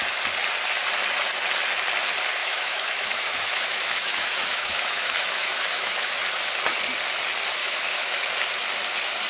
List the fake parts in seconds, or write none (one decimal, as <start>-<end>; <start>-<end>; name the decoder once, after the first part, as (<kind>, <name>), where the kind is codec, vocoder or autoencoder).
2.4-6.1 (autoencoder, DAC-VAE); 7.6-8.2

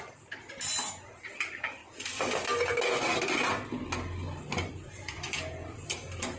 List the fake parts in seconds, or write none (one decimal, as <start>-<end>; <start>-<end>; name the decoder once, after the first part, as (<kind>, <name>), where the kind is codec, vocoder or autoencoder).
none

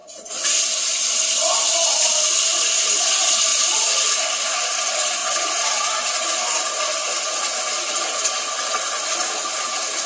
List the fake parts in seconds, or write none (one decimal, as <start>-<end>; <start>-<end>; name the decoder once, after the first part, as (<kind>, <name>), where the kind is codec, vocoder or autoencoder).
none

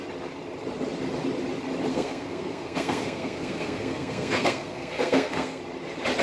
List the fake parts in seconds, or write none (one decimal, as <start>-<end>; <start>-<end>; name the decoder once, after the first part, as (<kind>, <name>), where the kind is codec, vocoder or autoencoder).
1.9-5.6 (codec, SNAC)

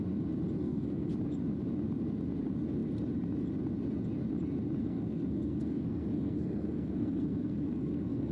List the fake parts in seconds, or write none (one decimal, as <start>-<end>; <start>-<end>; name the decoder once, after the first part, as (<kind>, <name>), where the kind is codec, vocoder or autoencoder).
0.6-1.1 (codec, SNAC); 4.8-8.3